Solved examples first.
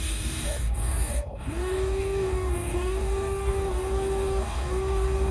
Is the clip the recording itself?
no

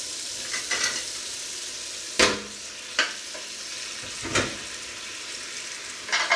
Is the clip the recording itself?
yes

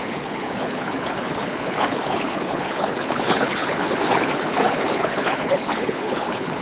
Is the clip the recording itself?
no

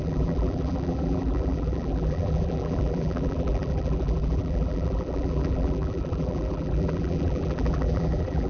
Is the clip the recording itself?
no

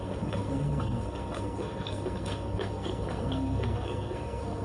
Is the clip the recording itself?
no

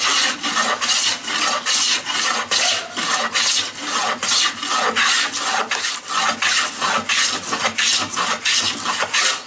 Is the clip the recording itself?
yes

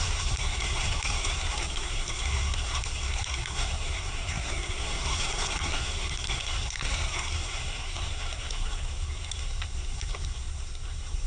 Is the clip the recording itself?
no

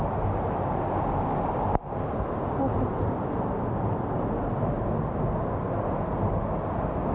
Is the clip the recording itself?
yes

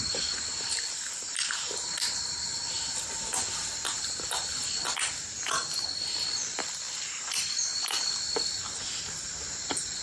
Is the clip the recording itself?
yes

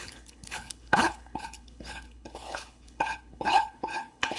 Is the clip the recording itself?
no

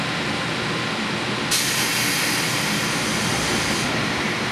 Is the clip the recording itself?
yes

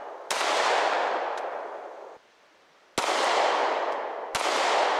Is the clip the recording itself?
yes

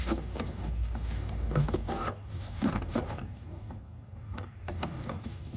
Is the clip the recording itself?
no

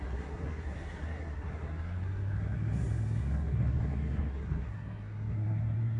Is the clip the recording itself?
no